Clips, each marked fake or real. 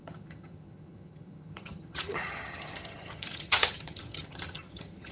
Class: fake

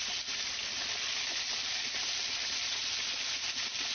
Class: real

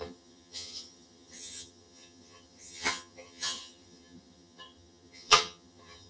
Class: fake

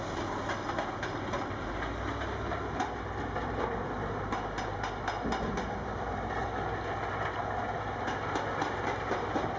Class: real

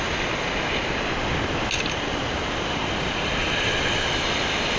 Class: real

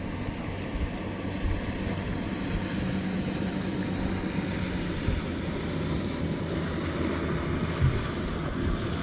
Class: real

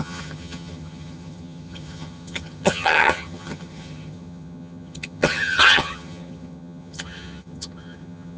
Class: fake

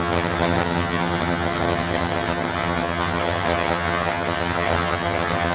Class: fake